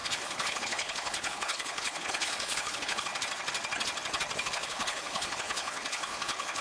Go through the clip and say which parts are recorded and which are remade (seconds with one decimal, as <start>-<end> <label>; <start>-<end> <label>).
0.0-3.1 remade; 3.1-4.4 recorded; 4.4-6.6 remade